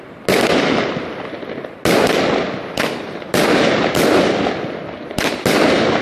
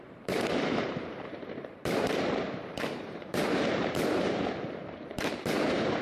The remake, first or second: second